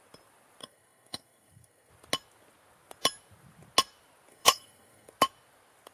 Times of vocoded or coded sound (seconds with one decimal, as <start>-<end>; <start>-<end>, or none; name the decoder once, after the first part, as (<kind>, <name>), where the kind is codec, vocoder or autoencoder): 0.6-1.9 (codec, SNAC); 4.3-5.1